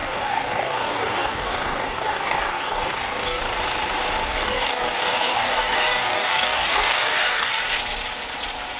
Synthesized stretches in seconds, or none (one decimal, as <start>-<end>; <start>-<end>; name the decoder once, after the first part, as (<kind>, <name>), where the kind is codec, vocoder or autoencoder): 0.0-3.4 (codec, DAC); 4.2-7.6